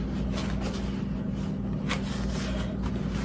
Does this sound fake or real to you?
real